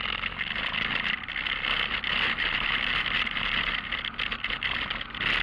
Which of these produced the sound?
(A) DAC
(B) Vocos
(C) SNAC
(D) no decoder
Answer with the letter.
D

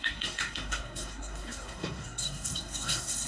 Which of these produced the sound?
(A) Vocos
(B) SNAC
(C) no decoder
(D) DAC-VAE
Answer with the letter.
B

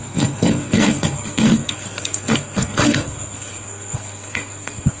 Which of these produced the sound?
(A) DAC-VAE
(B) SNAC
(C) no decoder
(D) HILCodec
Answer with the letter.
B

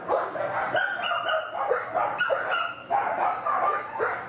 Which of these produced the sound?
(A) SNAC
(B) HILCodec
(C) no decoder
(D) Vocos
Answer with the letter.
C